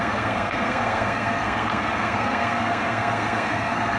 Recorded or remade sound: remade